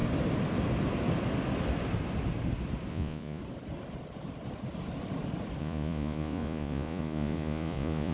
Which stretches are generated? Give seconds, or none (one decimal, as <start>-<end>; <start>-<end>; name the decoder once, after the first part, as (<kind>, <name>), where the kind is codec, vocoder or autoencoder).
2.9-3.4 (vocoder, Vocos); 5.6-8.1